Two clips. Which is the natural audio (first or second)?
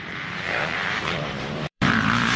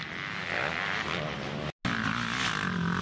second